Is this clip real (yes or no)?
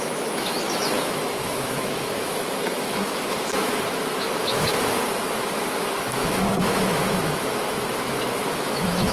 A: no